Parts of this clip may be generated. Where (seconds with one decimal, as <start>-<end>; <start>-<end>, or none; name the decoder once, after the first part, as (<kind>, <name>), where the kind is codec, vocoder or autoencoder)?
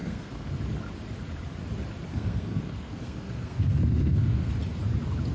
0.0-0.5 (codec, SNAC); 2.1-4.5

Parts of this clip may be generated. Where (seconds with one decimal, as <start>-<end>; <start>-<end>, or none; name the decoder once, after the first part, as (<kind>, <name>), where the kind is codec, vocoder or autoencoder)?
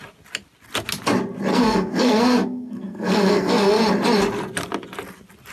1.5-3.8 (codec, SNAC)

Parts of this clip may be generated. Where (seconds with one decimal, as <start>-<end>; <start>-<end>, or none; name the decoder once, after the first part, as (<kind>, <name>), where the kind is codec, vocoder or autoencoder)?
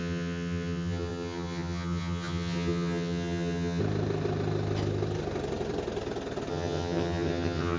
0.0-3.8 (vocoder, HiFi-GAN); 6.5-7.8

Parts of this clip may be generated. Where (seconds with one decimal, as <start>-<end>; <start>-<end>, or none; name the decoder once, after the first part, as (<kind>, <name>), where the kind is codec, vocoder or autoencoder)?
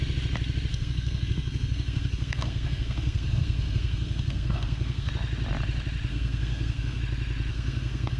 0.7-5.1 (codec, SNAC); 6.1-7.0; 7.5-8.2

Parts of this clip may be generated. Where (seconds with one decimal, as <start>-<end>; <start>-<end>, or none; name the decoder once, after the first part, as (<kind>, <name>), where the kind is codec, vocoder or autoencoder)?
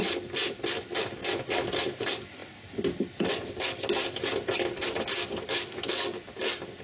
none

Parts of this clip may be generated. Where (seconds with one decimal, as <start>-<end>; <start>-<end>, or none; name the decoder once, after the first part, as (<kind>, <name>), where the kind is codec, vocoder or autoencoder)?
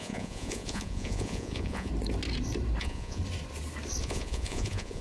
0.0-1.9 (vocoder, Vocos); 2.8-3.2; 4.0-5.0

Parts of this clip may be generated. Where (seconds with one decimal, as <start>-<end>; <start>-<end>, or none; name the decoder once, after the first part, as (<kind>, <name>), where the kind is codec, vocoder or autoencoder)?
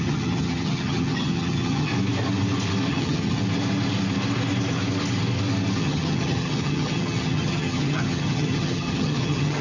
0.0-1.9 (vocoder, HiFi-GAN); 2.9-3.4; 5.8-9.6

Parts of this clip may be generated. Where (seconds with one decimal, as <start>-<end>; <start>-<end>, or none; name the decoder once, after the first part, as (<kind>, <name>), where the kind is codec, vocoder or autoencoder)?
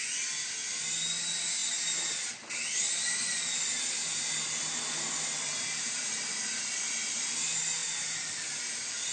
none